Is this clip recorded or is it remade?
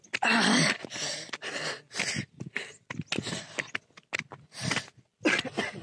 recorded